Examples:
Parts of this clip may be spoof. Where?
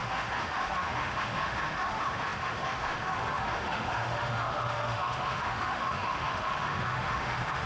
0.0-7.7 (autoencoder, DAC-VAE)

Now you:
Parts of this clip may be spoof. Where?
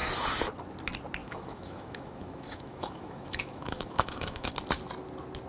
1.2-4.5 (autoencoder, DAC-VAE)